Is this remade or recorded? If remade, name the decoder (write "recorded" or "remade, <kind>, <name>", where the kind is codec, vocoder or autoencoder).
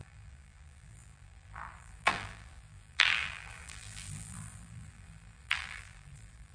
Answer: remade, vocoder, BigVGAN v2